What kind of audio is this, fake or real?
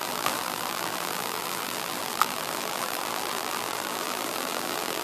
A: fake